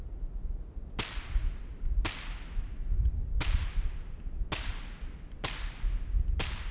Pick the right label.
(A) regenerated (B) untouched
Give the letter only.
B